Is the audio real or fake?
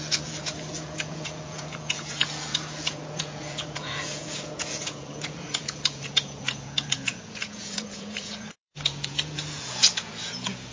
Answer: fake